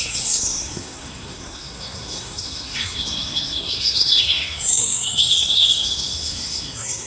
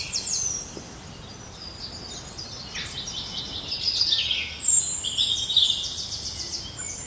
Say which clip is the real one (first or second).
second